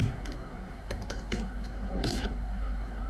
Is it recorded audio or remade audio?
remade